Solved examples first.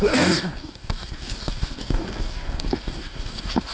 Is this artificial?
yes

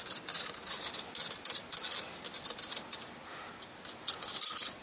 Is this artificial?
no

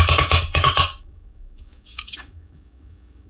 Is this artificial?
yes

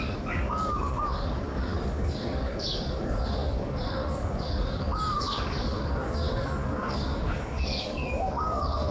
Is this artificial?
yes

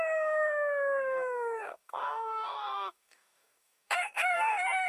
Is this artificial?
yes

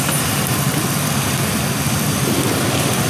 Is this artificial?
no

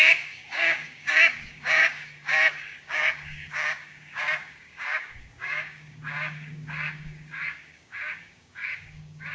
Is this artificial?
yes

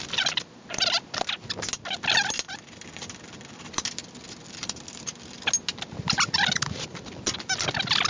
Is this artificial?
no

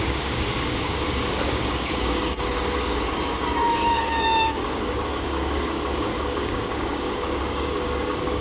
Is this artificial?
yes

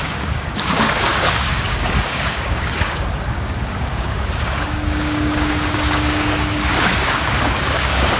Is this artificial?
yes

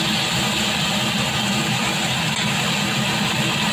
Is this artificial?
no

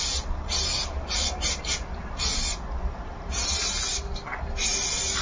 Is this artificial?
no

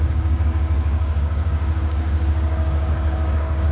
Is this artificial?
yes